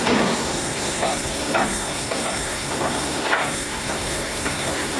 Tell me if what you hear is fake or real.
fake